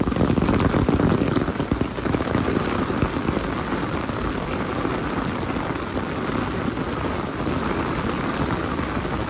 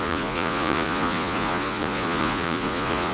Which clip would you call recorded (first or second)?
first